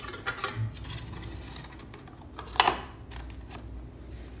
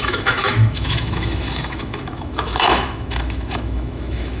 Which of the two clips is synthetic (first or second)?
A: second